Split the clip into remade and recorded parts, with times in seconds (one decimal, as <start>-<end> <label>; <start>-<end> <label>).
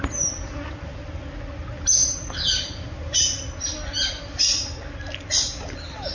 0.0-6.1 recorded